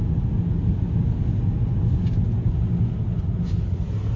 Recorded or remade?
recorded